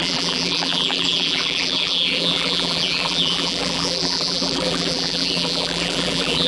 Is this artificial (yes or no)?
yes